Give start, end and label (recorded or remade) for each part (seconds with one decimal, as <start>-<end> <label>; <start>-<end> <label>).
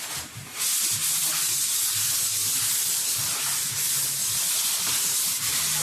0.0-5.8 recorded